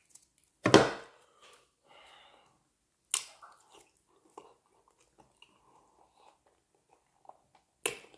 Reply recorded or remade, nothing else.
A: recorded